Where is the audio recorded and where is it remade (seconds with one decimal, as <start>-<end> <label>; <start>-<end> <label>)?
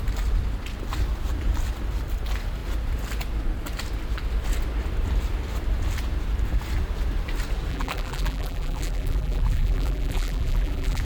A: 0.0-7.7 recorded; 7.7-11.0 remade